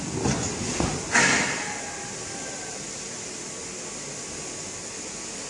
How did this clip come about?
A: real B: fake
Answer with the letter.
A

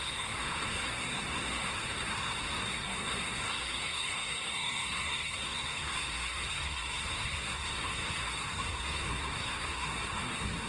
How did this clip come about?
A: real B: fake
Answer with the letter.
B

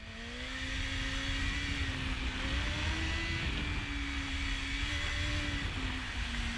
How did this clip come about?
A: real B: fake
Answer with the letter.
A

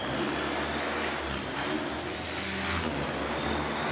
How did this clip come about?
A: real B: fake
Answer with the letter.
A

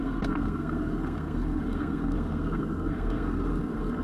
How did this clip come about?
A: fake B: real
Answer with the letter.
A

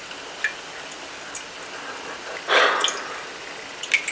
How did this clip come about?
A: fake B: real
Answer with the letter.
B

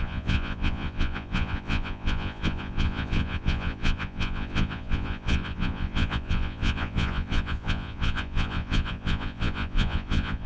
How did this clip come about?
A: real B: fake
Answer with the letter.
B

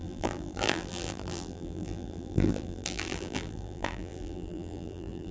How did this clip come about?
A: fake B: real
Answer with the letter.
A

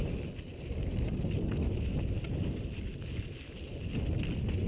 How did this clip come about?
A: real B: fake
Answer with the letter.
A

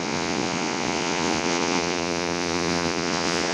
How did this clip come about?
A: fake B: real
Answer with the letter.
A